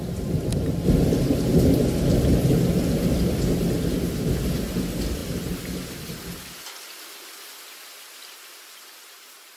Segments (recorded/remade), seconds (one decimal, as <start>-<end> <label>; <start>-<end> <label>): 0.0-9.6 recorded